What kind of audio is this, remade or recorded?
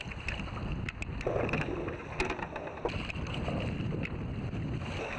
recorded